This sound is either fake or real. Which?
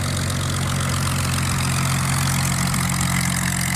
real